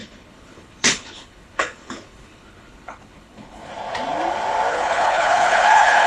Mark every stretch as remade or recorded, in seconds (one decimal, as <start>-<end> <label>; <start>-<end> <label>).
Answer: 0.0-3.7 remade; 3.7-4.7 recorded; 4.7-6.1 remade